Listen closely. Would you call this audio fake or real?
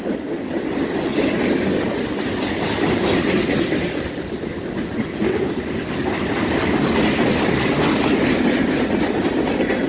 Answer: real